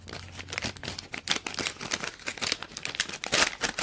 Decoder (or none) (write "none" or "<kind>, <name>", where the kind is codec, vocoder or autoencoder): none